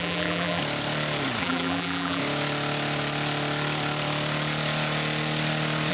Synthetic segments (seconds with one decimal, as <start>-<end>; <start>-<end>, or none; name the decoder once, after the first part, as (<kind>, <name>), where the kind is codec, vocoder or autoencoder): 0.0-0.6 (vocoder, BigVGAN v2); 1.4-2.2